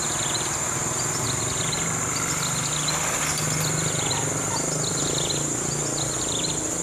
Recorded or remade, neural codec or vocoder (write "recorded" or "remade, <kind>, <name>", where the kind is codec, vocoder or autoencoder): recorded